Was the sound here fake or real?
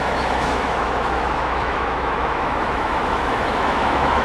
fake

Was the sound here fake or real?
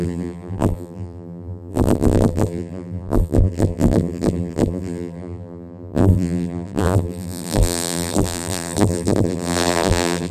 fake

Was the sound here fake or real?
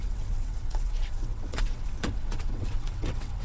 fake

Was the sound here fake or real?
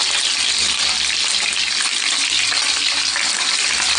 real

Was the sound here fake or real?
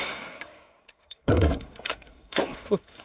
fake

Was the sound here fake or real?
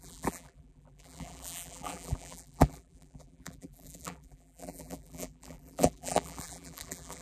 fake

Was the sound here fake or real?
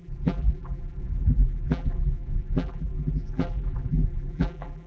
fake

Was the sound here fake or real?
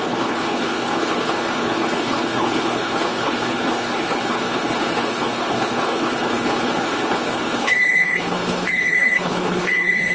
fake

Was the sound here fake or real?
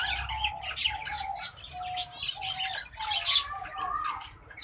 real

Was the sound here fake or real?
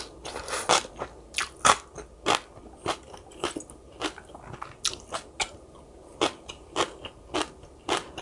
real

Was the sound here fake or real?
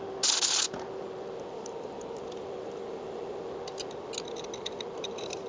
real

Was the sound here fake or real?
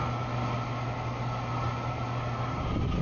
real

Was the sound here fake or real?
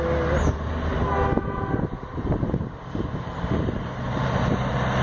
real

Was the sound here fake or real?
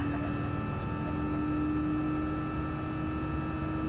real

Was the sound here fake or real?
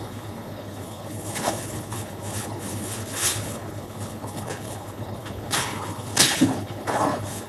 fake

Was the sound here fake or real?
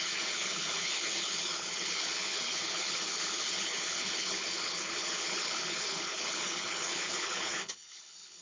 fake